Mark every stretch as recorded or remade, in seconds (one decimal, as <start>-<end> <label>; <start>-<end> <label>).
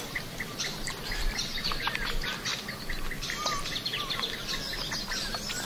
0.0-5.7 recorded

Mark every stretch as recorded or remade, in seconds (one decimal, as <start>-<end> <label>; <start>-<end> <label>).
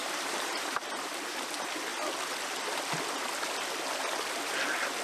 0.0-1.5 remade; 1.5-5.0 recorded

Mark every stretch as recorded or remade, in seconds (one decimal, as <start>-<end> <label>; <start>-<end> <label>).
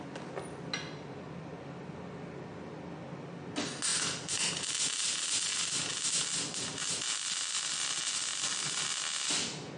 0.0-9.8 recorded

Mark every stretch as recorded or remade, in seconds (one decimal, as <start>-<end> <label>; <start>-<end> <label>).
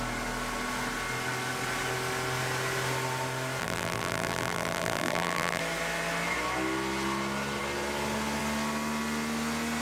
0.0-3.6 recorded; 3.6-5.6 remade; 5.6-9.8 recorded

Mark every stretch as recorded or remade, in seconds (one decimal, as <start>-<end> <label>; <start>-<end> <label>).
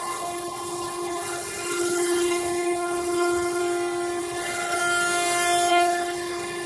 0.0-3.6 remade; 3.6-4.2 recorded; 4.2-4.8 remade; 4.8-5.7 recorded; 5.7-6.7 remade